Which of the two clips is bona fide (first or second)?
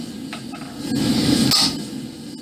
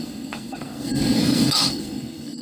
first